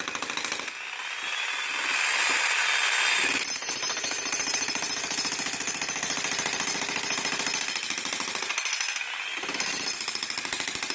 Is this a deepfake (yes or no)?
no